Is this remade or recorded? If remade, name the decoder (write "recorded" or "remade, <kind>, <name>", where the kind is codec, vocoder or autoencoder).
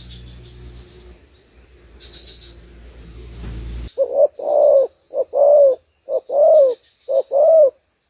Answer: recorded